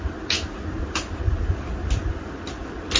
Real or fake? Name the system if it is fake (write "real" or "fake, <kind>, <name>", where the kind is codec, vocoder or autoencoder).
real